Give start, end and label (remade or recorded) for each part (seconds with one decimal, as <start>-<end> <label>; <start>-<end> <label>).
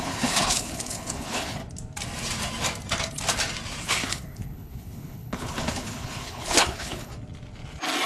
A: 0.0-1.6 remade; 1.6-3.8 recorded; 3.8-7.1 remade; 7.1-8.1 recorded